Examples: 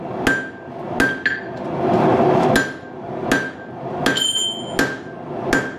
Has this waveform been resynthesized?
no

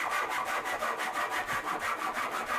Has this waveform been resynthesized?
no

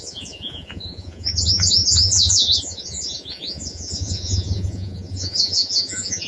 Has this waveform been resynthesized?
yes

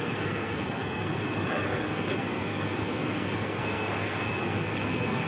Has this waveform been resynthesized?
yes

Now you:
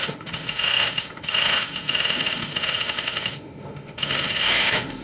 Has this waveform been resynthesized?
yes